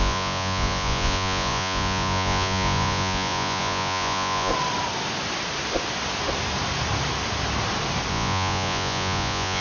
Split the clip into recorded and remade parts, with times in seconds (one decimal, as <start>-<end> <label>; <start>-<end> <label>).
0.0-4.5 remade; 4.5-8.1 recorded; 8.1-9.6 remade